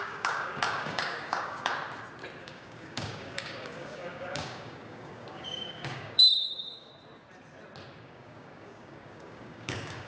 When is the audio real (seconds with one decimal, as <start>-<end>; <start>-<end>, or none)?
1.7-2.4; 6.9-8.0